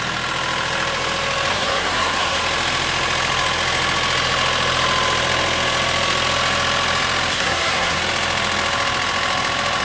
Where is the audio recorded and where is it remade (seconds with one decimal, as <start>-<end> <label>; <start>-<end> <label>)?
0.0-1.5 recorded; 1.5-2.4 remade; 2.4-7.3 recorded; 7.3-8.0 remade; 8.0-9.8 recorded

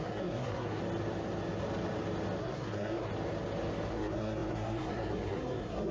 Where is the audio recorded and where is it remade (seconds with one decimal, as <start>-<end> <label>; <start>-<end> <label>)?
0.0-0.8 remade; 0.8-2.4 recorded; 2.4-3.1 remade; 3.1-3.9 recorded; 3.9-5.9 remade

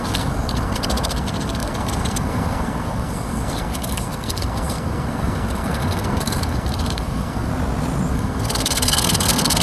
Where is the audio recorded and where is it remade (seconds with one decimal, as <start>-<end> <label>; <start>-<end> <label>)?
0.0-7.5 remade; 7.5-8.1 recorded; 8.1-9.6 remade